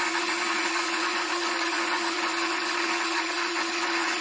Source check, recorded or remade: remade